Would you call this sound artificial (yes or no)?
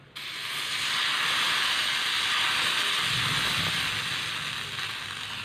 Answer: no